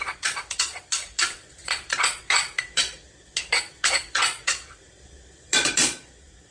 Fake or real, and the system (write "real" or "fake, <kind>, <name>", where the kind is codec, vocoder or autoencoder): fake, vocoder, Vocos